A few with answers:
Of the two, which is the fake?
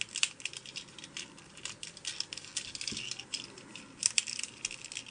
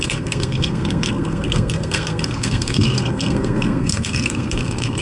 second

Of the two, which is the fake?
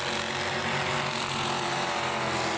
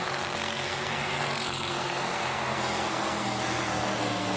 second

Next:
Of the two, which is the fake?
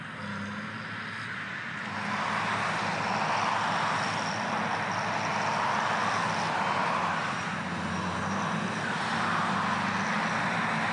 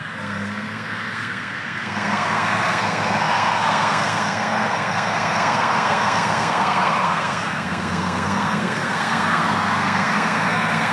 second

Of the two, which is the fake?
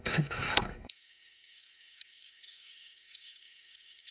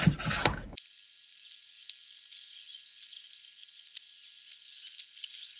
first